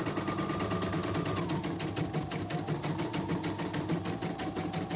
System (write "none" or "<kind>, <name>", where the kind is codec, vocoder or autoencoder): none